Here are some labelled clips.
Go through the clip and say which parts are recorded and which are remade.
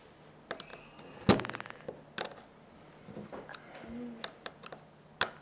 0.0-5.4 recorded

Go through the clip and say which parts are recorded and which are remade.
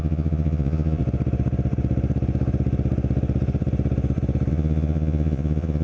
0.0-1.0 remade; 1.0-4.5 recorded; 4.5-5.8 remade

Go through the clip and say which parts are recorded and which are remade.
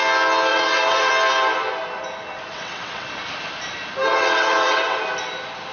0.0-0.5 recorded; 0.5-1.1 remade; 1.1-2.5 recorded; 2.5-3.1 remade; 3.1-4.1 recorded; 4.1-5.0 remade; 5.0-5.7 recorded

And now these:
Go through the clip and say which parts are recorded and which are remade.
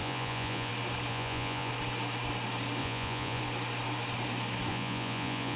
0.0-0.7 remade; 0.7-1.1 recorded; 1.1-1.7 remade; 1.7-2.8 recorded; 2.8-3.4 remade; 3.4-4.7 recorded; 4.7-5.6 remade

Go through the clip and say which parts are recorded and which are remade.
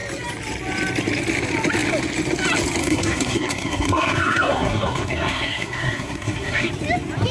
0.0-2.8 recorded; 2.8-6.7 remade; 6.7-7.3 recorded